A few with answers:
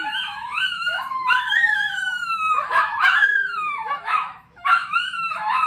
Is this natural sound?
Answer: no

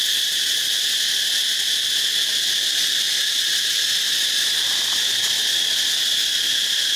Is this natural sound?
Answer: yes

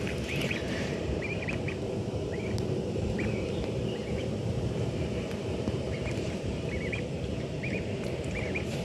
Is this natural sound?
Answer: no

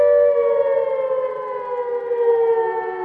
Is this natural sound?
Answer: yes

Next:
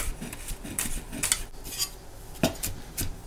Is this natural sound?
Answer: yes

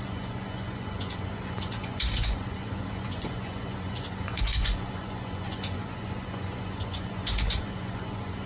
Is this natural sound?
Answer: no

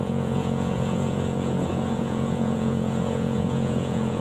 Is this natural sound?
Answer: no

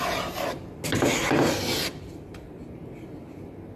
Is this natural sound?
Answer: yes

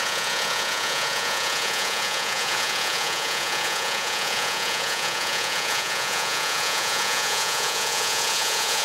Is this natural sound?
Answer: no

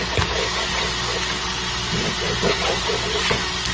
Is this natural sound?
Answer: yes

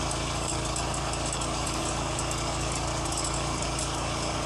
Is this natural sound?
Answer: no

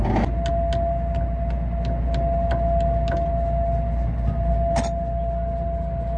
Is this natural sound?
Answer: yes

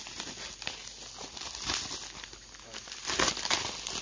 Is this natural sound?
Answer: yes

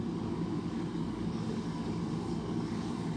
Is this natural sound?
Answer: no